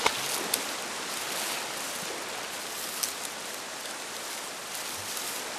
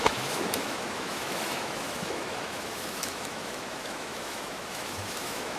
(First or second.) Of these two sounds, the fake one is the second